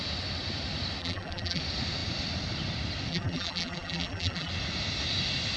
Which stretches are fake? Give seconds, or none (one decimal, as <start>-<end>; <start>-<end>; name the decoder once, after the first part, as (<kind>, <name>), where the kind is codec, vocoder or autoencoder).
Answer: 1.0-1.6 (vocoder, BigVGAN v2); 3.1-4.5